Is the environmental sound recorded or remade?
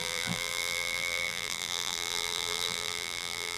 remade